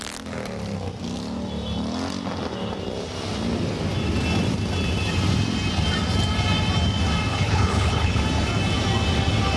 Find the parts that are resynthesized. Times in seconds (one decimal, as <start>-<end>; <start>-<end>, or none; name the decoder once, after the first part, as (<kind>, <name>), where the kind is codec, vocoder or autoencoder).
7.3-8.2 (codec, HILCodec)